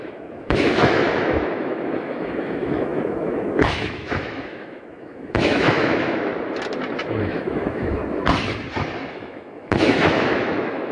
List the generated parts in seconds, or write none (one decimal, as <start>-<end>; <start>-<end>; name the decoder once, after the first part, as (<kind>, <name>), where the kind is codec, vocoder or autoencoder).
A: 0.0-6.3 (autoencoder, DAC-VAE); 7.2-8.0; 9.1-10.9